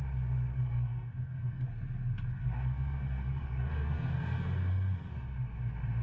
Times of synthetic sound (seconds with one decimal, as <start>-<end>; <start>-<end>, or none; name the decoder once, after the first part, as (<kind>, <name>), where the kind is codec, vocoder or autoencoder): 0.5-1.7 (codec, SNAC); 2.3-5.1